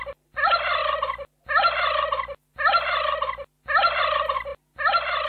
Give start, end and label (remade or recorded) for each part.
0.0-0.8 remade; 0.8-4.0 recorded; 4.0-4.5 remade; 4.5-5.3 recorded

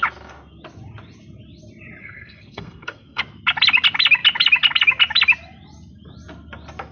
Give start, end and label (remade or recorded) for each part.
0.0-2.0 recorded; 2.0-3.2 remade; 3.2-6.9 recorded

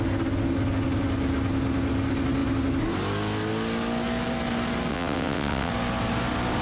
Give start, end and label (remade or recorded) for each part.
0.0-4.9 recorded; 4.9-5.7 remade; 5.7-6.6 recorded

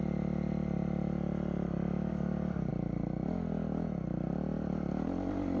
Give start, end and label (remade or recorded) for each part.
0.0-2.1 recorded; 2.1-2.7 remade; 2.7-5.6 recorded

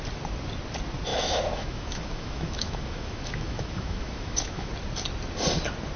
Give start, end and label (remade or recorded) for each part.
0.0-1.1 recorded; 1.1-4.7 remade; 4.7-6.0 recorded

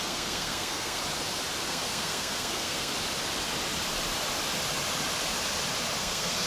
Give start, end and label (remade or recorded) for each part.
0.0-1.0 remade; 1.0-1.7 recorded; 1.7-2.9 remade; 2.9-6.0 recorded; 6.0-6.5 remade

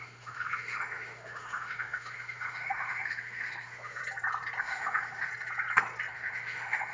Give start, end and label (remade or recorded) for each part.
0.0-4.0 remade; 4.0-4.6 recorded; 4.6-5.3 remade; 5.3-6.1 recorded; 6.1-6.9 remade

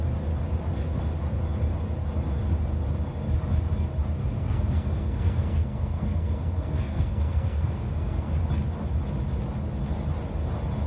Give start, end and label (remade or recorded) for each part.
0.0-4.2 recorded; 4.2-8.4 remade; 8.4-10.9 recorded